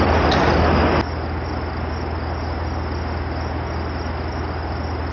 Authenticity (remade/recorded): recorded